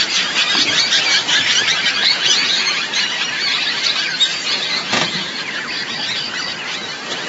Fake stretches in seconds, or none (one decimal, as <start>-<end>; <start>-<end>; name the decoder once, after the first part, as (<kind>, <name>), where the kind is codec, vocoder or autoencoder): 2.0-2.7 (vocoder, Vocos); 4.3-5.4